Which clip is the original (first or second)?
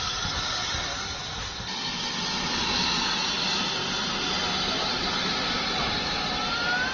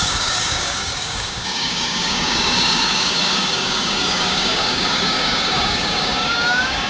first